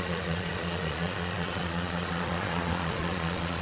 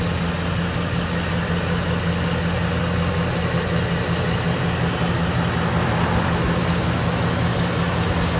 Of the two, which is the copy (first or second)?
first